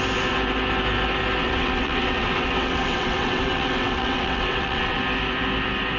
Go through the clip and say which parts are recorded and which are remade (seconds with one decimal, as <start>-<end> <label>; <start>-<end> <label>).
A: 0.0-1.4 recorded; 1.4-5.0 remade; 5.0-6.0 recorded